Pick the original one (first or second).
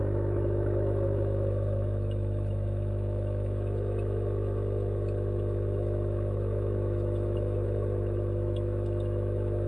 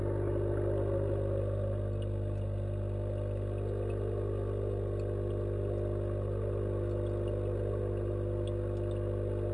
second